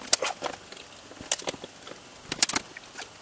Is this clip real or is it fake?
real